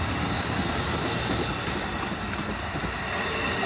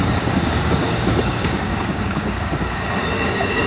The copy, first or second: second